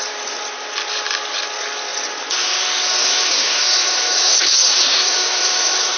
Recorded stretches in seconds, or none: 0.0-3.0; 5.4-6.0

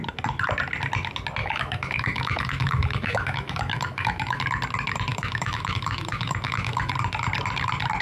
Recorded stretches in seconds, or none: 0.0-1.4; 4.4-5.1; 6.9-8.0

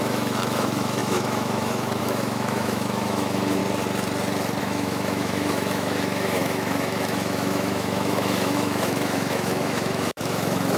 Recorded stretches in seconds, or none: 3.6-4.6

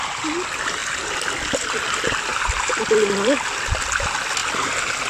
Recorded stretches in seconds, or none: 0.0-0.8; 1.4-2.3; 2.9-4.4

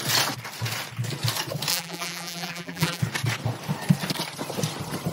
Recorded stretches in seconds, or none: 0.0-1.7; 3.0-5.1